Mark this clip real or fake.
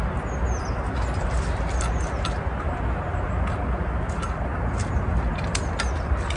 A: real